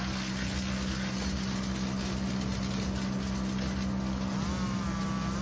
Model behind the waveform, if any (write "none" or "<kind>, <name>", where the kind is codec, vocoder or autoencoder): none